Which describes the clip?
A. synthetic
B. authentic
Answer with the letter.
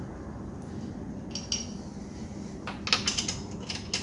B